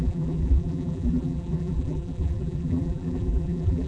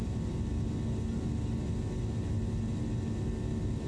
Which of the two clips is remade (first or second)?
first